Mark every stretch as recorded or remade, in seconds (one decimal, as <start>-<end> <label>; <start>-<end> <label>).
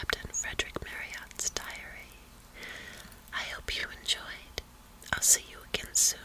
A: 0.0-6.2 recorded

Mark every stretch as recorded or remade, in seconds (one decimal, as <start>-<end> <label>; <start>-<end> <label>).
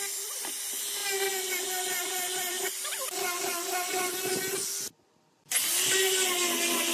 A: 0.0-6.9 recorded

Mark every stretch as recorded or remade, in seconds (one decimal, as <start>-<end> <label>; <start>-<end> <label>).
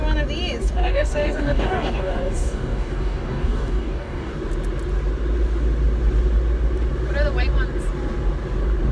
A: 0.0-0.6 recorded; 0.6-4.3 remade; 4.3-8.9 recorded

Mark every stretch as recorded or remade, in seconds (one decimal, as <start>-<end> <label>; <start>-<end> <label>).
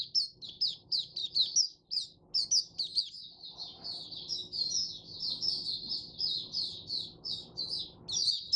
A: 0.0-8.6 recorded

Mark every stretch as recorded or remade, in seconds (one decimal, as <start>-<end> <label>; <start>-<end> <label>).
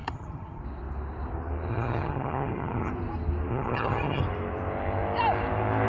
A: 0.0-0.6 remade; 0.6-1.7 recorded; 1.7-2.9 remade; 2.9-3.5 recorded; 3.5-4.2 remade; 4.2-5.9 recorded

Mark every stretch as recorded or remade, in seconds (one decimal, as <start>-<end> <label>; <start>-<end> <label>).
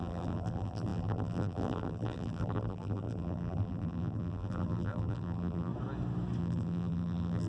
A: 0.0-5.7 remade; 5.7-6.4 recorded; 6.4-7.5 remade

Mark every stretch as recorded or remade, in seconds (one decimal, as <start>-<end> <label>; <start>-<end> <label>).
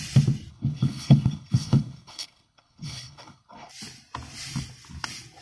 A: 0.0-0.5 recorded; 0.5-3.7 remade; 3.7-5.4 recorded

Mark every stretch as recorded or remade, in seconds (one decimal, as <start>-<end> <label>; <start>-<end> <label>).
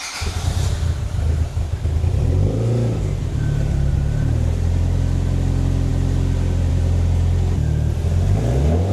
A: 0.0-8.9 recorded